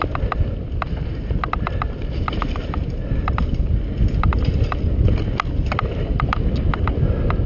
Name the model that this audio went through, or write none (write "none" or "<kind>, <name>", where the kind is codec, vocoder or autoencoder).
none